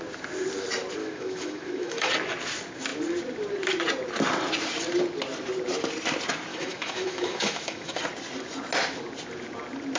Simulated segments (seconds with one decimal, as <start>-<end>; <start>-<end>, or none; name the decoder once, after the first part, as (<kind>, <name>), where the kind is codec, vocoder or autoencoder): 1.0-2.1 (autoencoder, DAC-VAE); 6.5-8.0